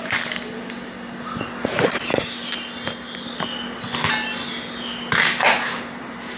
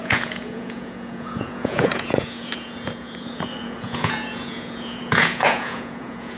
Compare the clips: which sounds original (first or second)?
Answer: first